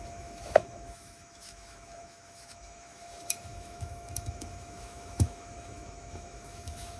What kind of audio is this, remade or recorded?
remade